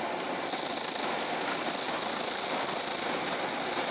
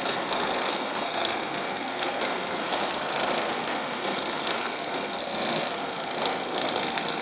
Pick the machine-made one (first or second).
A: second